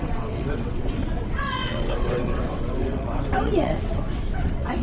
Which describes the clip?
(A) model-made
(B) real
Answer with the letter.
A